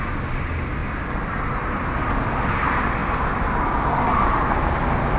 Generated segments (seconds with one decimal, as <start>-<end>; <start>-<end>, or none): none